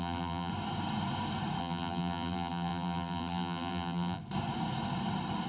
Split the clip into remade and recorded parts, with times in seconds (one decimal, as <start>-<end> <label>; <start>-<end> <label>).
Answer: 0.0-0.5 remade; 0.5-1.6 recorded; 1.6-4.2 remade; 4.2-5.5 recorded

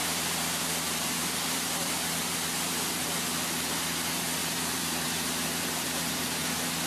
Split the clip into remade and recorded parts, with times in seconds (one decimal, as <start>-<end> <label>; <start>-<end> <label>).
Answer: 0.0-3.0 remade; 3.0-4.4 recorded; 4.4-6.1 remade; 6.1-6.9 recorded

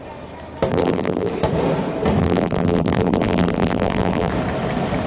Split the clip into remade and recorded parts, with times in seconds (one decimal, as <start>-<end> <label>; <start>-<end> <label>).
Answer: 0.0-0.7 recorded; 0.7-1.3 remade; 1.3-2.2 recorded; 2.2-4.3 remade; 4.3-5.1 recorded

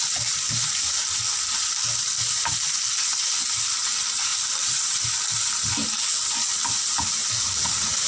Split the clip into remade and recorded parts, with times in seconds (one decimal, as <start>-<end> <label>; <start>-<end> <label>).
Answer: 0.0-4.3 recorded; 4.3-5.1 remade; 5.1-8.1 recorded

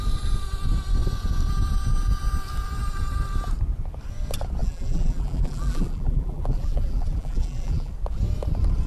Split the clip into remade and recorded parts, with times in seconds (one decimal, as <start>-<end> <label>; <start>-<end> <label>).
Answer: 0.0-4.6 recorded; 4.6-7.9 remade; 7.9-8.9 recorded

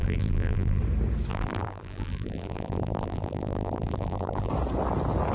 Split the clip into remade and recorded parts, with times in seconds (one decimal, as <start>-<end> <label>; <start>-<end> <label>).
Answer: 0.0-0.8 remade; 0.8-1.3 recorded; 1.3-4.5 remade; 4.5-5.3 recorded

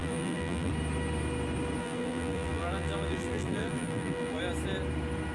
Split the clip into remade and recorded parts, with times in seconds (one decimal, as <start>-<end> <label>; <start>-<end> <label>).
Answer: 0.0-0.7 remade; 0.7-1.8 recorded; 1.8-4.4 remade; 4.4-5.3 recorded

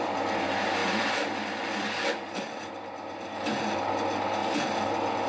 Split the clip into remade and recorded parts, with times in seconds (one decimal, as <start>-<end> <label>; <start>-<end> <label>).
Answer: 0.0-4.4 remade; 4.4-5.3 recorded